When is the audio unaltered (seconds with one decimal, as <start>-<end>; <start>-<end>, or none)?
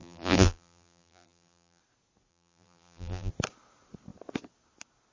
1.8-2.3; 3.3-5.1